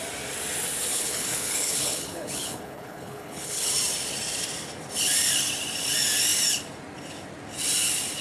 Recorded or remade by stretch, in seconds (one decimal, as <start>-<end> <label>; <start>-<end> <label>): 0.0-0.9 recorded; 0.9-3.7 remade; 3.7-8.2 recorded